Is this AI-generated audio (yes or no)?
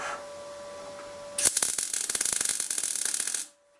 no